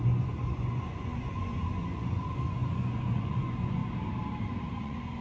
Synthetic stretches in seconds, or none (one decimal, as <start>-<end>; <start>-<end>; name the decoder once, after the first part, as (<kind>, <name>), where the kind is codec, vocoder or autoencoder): 0.0-3.8 (vocoder, Vocos); 4.8-5.2